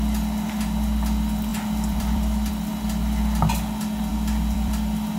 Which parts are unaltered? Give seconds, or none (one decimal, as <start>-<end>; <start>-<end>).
0.0-1.5; 2.5-4.1